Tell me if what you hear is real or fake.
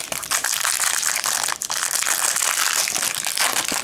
real